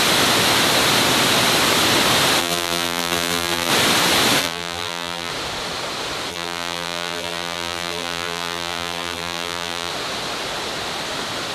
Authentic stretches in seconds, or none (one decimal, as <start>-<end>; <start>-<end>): 0.0-2.4; 3.7-4.4; 5.3-6.3; 9.9-11.5